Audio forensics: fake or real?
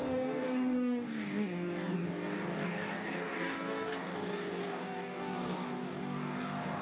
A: fake